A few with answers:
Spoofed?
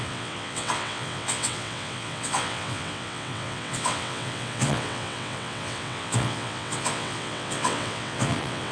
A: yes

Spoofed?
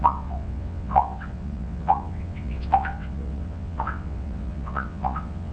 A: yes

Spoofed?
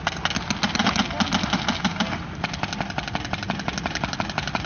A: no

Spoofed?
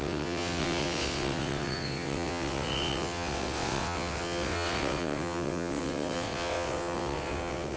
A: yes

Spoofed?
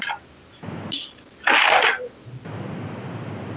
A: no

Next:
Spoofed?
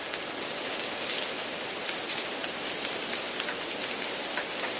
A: no